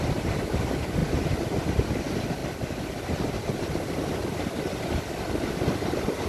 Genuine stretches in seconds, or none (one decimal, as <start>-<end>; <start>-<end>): 0.0-6.3